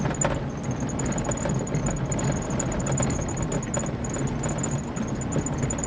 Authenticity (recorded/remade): recorded